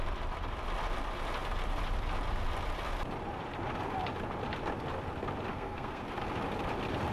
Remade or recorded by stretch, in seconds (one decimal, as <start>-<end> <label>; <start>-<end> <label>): 0.0-5.5 recorded; 5.5-6.0 remade; 6.0-7.1 recorded